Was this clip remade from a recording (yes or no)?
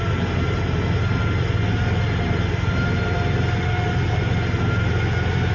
no